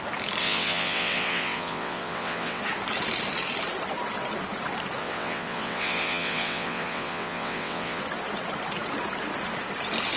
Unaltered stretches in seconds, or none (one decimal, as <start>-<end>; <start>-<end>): 0.0-0.4; 2.6-5.0; 8.0-10.2